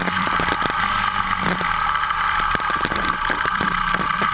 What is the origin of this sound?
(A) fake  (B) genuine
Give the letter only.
A